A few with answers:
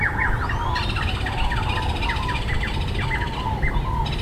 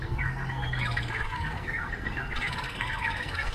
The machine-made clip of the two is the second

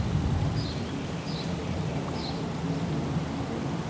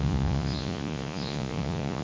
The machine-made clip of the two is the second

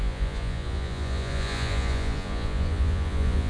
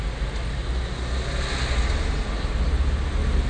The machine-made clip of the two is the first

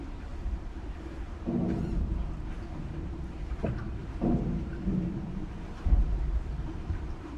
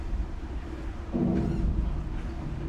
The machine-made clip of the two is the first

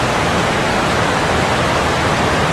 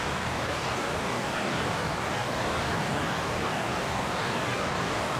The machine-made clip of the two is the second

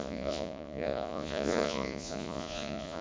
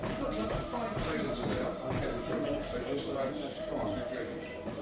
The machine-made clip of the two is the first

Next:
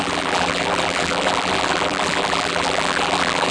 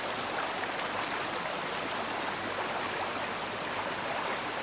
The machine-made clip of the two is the first